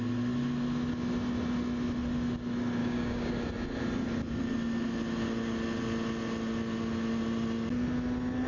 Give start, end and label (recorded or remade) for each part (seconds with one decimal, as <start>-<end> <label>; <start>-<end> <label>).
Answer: 0.0-2.8 recorded; 2.8-3.3 remade; 3.3-8.5 recorded